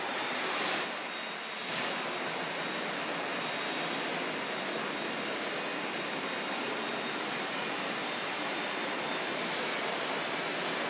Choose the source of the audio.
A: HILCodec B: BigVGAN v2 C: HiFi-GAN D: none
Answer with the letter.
D